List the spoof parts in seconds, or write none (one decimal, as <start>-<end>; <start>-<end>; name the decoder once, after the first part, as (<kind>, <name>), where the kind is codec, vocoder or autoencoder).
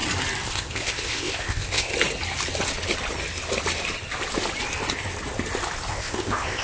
0.5-1.9 (codec, ZipCodec); 5.9-6.6